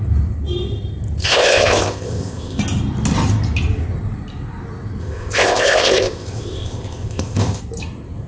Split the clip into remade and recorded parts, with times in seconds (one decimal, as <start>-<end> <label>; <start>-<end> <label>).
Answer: 0.0-1.2 recorded; 1.2-2.6 remade; 2.6-5.0 recorded; 5.0-7.6 remade; 7.6-8.3 recorded

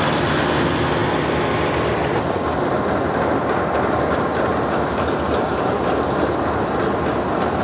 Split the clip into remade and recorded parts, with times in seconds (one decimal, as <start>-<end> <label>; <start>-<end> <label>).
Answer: 0.0-7.6 recorded

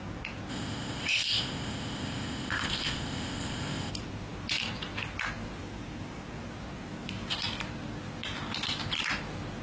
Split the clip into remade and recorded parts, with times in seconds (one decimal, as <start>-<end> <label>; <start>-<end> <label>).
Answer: 0.0-0.5 recorded; 0.5-3.9 remade; 3.9-9.6 recorded

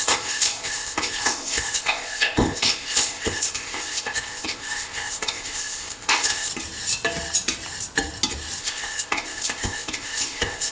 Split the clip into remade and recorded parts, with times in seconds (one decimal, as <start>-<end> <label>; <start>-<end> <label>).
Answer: 0.0-6.5 remade; 6.5-8.6 recorded; 8.6-10.7 remade

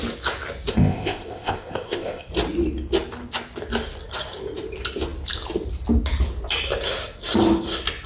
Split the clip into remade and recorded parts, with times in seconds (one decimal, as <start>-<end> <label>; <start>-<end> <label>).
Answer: 0.0-0.7 recorded; 0.7-2.3 remade; 2.3-8.1 recorded

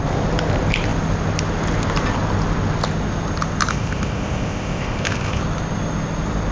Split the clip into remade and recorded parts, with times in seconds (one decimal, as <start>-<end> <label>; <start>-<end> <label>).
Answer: 0.0-3.7 recorded; 3.7-5.4 remade; 5.4-6.5 recorded

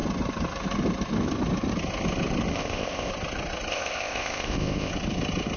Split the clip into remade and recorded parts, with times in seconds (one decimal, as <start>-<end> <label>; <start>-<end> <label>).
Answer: 0.0-2.5 recorded; 2.5-3.1 remade; 3.1-3.7 recorded; 3.7-4.9 remade; 4.9-5.6 recorded

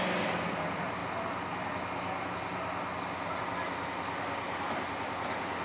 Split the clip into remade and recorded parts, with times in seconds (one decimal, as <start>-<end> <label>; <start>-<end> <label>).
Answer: 0.0-5.6 recorded